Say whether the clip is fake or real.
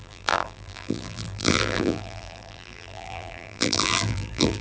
fake